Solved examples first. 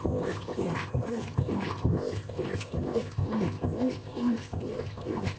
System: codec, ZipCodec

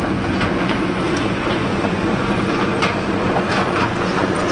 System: vocoder, Vocos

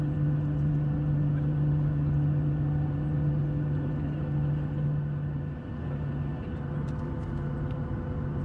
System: none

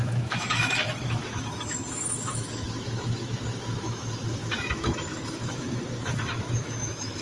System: autoencoder, DAC-VAE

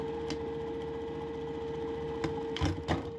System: none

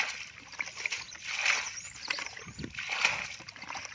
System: none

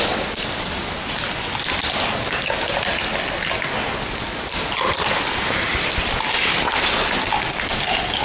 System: none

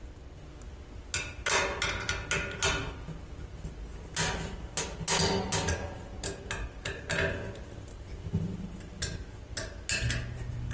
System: none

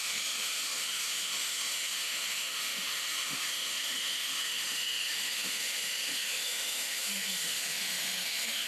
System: autoencoder, DAC-VAE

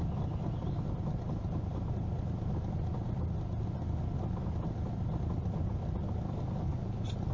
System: none